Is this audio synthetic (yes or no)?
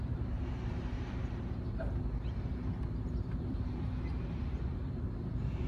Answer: yes